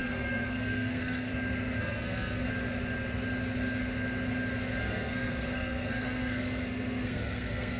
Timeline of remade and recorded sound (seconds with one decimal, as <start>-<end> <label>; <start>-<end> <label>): 0.0-1.3 remade; 1.3-1.8 recorded; 1.8-2.5 remade; 2.5-4.8 recorded; 4.8-7.8 remade